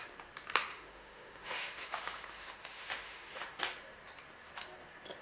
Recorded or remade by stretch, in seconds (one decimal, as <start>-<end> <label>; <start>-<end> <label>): 0.0-0.7 recorded; 0.7-3.6 remade; 3.6-5.2 recorded